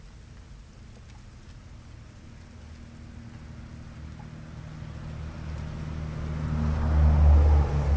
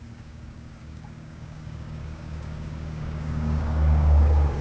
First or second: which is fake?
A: second